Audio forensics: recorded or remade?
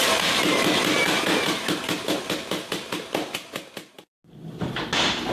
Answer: recorded